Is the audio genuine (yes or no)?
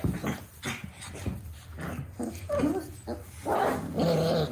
yes